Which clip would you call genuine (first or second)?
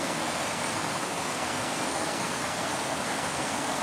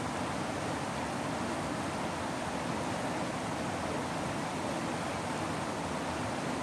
second